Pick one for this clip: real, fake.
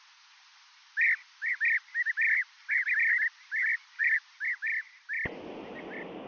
real